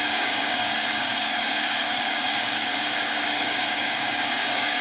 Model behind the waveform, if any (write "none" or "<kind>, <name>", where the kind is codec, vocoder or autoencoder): codec, DAC